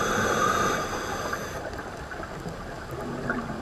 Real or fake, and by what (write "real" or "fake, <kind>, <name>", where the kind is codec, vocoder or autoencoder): real